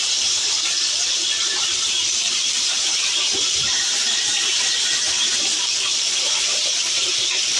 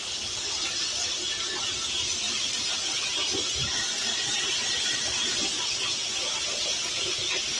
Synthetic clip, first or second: first